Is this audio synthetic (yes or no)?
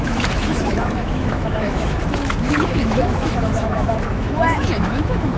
yes